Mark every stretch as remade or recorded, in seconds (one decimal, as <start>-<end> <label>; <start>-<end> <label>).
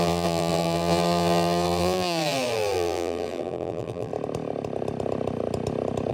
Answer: 0.0-4.1 remade; 4.1-6.1 recorded